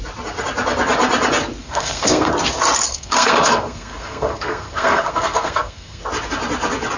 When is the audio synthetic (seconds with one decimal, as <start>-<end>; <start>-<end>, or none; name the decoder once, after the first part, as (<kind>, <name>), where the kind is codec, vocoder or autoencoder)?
1.6-2.3 (codec, SNAC); 2.9-6.0